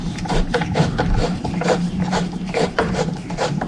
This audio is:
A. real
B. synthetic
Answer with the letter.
B